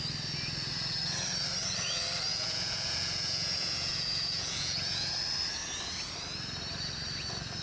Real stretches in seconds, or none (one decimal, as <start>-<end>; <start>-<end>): 0.0-2.3; 5.1-7.6